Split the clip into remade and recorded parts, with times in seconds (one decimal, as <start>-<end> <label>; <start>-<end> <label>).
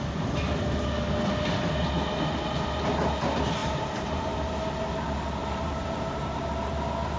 0.0-3.6 recorded; 3.6-4.3 remade; 4.3-5.4 recorded; 5.4-6.7 remade; 6.7-7.2 recorded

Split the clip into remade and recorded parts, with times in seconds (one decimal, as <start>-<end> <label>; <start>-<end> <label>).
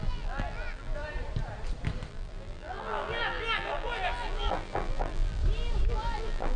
0.0-1.0 remade; 1.0-2.1 recorded; 2.1-5.4 remade; 5.4-5.9 recorded; 5.9-6.6 remade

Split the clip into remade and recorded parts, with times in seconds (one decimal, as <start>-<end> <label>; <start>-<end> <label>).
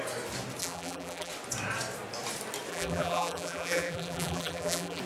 0.0-0.6 recorded; 0.6-1.3 remade; 1.3-2.7 recorded; 2.7-5.0 remade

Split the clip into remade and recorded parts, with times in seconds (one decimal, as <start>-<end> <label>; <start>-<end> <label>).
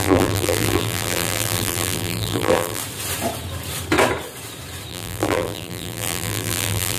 0.0-2.8 remade; 2.8-4.9 recorded; 4.9-7.0 remade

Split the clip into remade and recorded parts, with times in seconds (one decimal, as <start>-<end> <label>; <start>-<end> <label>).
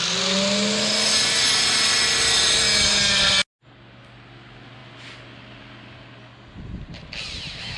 0.0-7.8 recorded